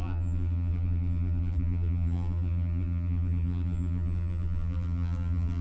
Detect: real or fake fake